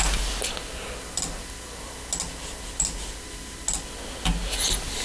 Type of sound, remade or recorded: recorded